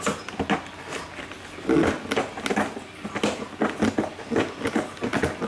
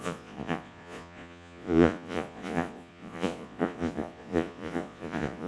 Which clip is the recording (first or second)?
first